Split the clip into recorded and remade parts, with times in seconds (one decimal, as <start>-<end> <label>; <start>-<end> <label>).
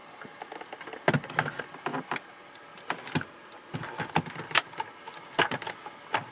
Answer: 0.0-6.3 recorded